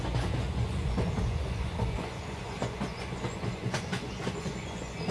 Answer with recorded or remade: remade